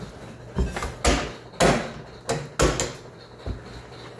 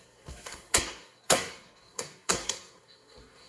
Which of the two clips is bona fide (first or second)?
first